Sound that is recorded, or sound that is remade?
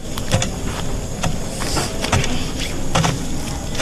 recorded